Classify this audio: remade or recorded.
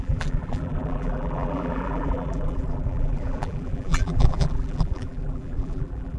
remade